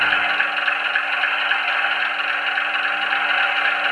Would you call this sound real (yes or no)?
yes